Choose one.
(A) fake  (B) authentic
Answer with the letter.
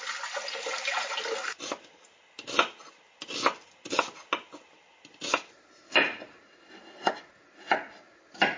B